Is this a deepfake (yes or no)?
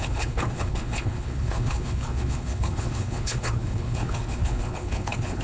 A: yes